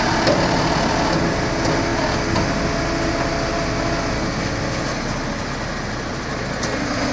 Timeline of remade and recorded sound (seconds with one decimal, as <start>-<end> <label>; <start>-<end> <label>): 0.0-7.1 recorded